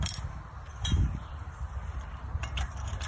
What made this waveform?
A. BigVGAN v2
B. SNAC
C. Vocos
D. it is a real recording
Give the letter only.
A